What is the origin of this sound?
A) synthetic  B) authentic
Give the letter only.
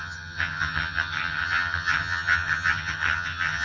A